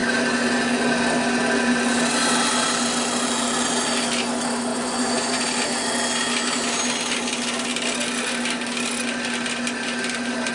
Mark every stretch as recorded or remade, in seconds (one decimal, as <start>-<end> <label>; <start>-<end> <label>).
0.0-4.7 recorded; 4.7-5.4 remade; 5.4-10.5 recorded